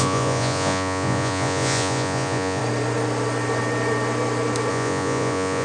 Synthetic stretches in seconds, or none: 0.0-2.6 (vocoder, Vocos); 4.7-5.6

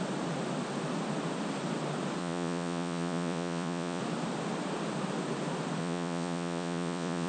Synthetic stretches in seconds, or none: 2.2-4.0 (vocoder, Vocos); 5.8-7.3

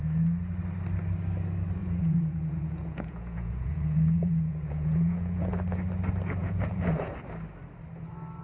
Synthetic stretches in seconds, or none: 1.8-5.5 (vocoder, Vocos); 6.4-7.1

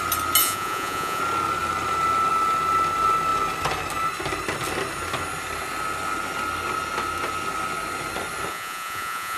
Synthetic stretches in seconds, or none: 0.4-1.2 (vocoder, Vocos); 8.5-9.4

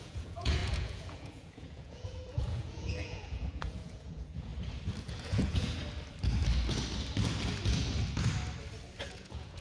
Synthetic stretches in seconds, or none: 0.0-4.5 (vocoder, Vocos); 5.0-5.8; 9.0-9.6